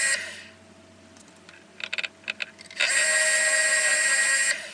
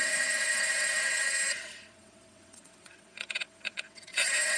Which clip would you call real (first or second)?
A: first